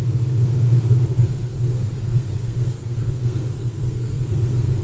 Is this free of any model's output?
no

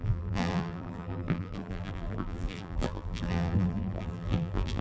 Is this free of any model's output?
no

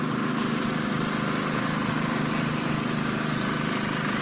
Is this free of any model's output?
yes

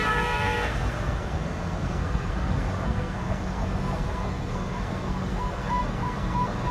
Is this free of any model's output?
no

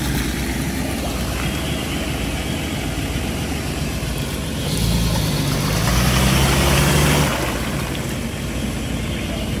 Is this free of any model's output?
yes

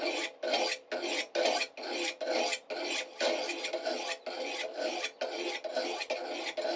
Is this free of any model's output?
yes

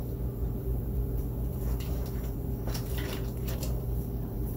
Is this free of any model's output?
no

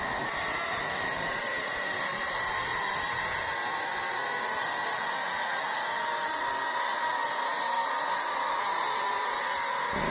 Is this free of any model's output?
yes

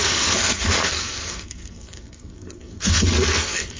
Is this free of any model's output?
no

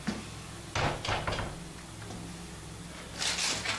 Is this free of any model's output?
yes